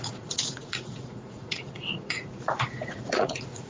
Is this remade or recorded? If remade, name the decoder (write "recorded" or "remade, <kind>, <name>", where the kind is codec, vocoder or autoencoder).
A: remade, vocoder, Vocos